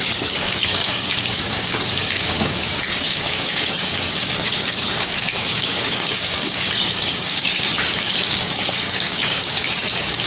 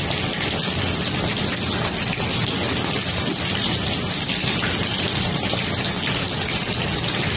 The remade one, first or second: first